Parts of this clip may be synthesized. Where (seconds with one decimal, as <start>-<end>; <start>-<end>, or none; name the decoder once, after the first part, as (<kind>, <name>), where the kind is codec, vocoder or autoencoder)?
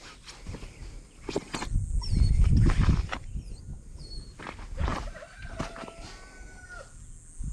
none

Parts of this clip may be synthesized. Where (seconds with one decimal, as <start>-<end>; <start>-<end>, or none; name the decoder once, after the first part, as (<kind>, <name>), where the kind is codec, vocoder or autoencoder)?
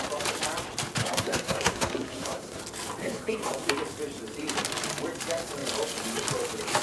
1.0-2.6 (codec, SNAC); 3.0-3.7